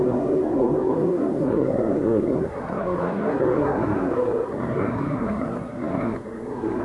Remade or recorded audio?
remade